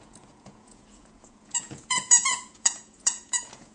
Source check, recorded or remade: remade